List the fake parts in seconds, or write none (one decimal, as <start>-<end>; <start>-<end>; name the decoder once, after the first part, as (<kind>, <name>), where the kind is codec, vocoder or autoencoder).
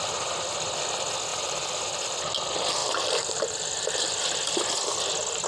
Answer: 1.3-1.8 (vocoder, BigVGAN v2); 2.8-5.5